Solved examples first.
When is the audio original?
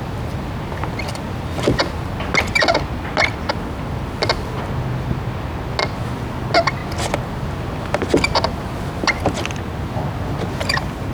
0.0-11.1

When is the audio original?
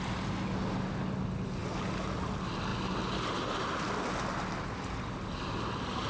0.0-6.1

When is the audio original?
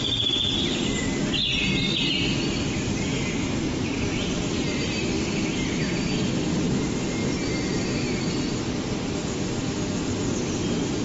0.0-4.1; 4.6-11.0